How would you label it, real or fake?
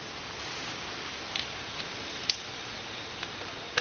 real